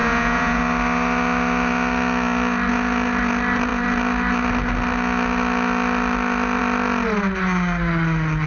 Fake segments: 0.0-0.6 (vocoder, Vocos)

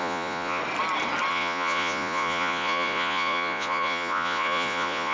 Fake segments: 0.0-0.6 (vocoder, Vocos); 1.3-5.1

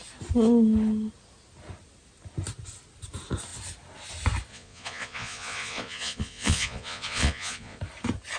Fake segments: 4.5-7.8 (vocoder, Vocos)

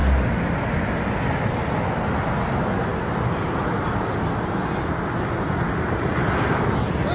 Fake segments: none

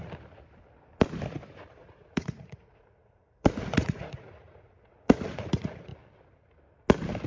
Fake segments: 1.7-5.9 (vocoder, Vocos)

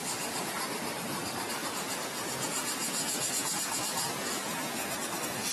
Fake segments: 1.6-4.9 (vocoder, Vocos)

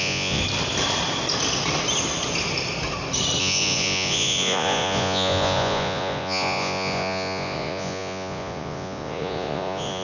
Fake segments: 0.0-0.4 (vocoder, Vocos); 3.4-10.0

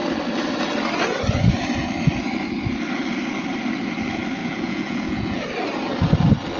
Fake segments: 4.4-5.4 (vocoder, Vocos)